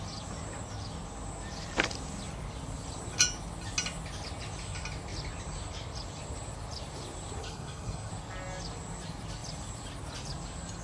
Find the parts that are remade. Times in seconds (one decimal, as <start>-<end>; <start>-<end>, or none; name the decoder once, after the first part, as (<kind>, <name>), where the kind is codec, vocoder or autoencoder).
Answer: 7.4-8.1 (codec, SNAC)